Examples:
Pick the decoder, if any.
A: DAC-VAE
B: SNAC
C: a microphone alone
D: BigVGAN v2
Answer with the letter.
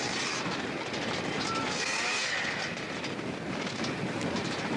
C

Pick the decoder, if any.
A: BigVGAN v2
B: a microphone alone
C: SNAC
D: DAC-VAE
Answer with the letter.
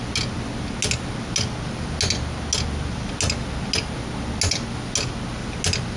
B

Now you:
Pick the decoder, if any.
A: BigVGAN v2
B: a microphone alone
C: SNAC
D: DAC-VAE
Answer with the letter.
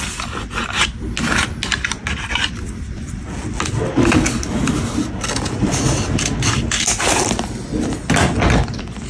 B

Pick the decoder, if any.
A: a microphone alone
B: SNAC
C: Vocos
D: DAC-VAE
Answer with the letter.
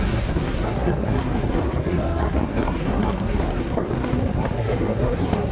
B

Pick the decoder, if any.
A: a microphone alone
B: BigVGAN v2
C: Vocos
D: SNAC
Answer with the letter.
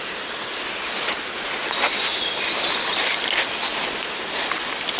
A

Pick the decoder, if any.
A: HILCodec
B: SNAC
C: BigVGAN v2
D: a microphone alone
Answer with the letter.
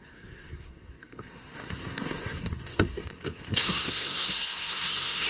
B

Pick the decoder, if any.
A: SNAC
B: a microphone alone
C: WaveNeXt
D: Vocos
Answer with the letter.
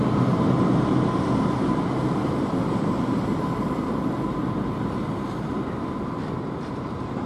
B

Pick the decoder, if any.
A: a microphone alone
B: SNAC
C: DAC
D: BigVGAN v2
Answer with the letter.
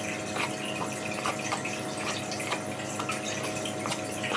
A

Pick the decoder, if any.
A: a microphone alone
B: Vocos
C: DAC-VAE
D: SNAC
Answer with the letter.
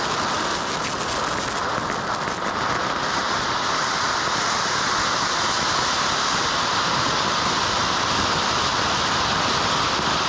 A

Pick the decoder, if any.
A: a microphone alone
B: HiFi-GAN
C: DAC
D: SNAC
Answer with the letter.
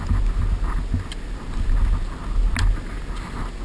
A